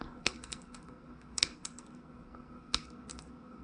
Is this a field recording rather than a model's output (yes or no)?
no